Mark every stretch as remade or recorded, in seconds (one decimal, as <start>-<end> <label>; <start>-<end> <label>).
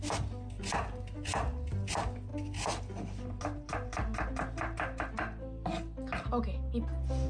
0.0-7.3 recorded